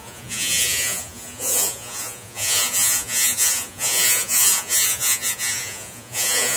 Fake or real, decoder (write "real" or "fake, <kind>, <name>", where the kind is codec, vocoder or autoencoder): fake, vocoder, Vocos